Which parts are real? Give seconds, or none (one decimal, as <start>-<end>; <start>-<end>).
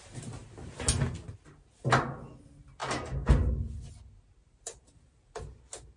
0.0-4.4; 5.4-6.0